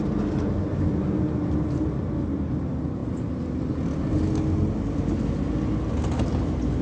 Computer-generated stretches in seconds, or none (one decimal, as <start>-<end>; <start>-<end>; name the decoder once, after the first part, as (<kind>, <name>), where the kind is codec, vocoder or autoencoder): none